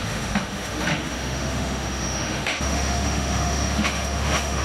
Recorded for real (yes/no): no